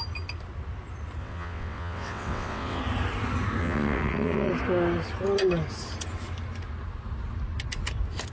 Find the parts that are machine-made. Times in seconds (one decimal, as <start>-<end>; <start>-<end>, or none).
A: 1.2-2.8; 3.6-4.5